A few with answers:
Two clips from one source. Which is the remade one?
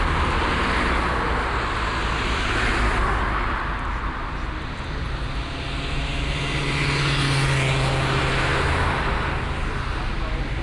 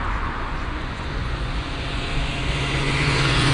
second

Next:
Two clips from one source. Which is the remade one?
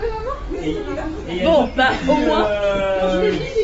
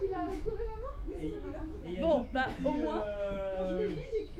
second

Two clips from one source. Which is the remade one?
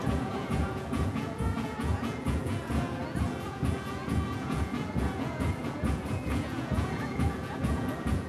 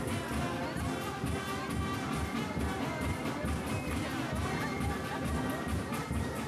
first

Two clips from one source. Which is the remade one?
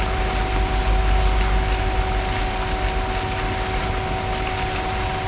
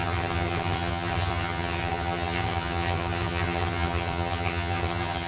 second